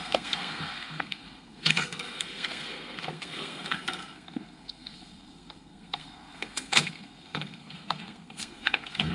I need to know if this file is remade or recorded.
remade